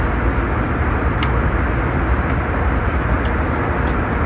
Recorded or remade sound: recorded